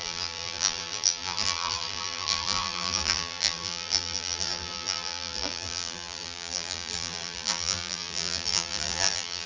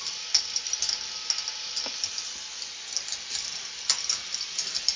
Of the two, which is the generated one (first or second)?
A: first